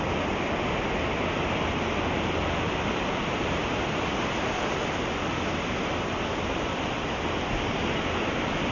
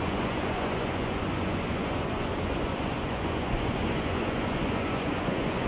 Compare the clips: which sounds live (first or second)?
first